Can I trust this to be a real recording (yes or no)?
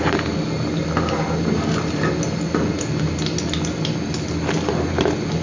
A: yes